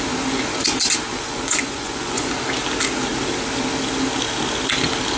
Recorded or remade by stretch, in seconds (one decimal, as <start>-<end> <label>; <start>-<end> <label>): 0.0-1.1 recorded; 1.1-2.3 remade; 2.3-5.2 recorded